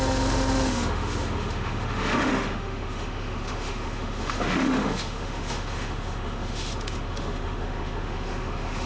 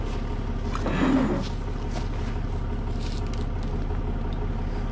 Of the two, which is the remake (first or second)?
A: first